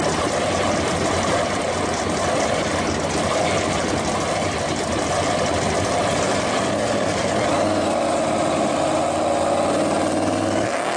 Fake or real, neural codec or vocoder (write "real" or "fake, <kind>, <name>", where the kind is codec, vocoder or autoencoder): real